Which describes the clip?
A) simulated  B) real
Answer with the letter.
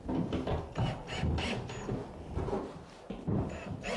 B